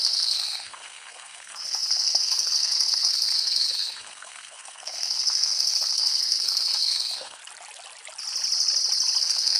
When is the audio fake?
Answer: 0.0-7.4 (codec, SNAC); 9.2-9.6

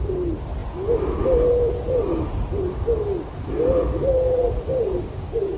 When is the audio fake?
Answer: none

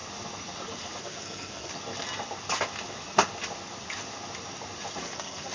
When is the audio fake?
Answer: 1.0-1.7 (codec, SNAC); 5.0-5.5